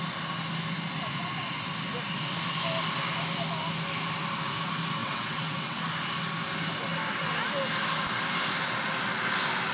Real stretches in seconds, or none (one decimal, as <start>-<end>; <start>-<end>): 0.0-5.0; 5.8-9.7